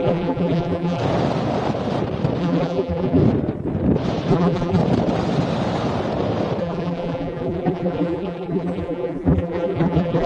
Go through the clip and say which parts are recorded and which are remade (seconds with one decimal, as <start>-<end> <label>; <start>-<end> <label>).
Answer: 0.0-1.0 remade; 1.0-2.4 recorded; 2.4-3.2 remade; 3.2-4.3 recorded; 4.3-4.8 remade; 4.8-6.6 recorded; 6.6-10.3 remade